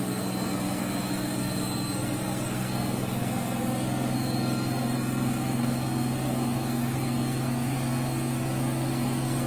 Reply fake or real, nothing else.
fake